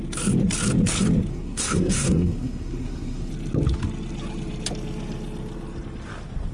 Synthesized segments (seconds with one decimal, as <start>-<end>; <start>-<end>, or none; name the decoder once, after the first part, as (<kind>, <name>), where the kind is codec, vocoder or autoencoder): 1.3-3.3 (codec, SNAC)